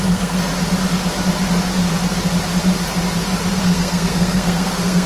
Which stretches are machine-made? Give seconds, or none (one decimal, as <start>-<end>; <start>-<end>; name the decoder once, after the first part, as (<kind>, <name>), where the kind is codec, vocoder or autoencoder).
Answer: 0.0-0.5 (codec, SNAC); 3.6-5.1